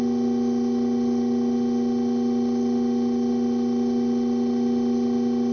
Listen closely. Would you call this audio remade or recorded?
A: recorded